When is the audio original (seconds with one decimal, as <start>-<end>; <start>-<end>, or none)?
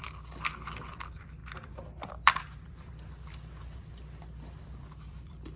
none